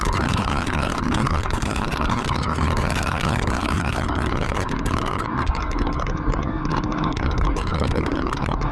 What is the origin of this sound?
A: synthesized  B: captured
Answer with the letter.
A